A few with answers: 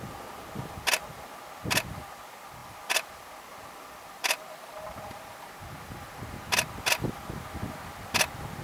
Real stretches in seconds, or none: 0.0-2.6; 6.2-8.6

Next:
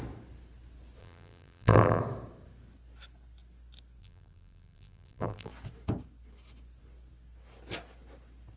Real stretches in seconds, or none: 0.0-1.0; 2.0-4.0; 5.5-8.6

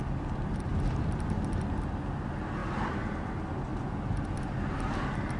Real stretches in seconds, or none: 0.0-0.7; 1.6-2.6; 3.3-5.4

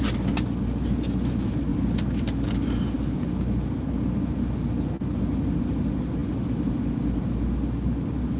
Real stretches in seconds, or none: 0.0-6.2; 6.7-8.4